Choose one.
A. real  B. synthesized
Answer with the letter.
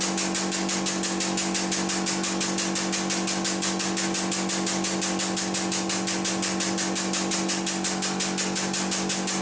A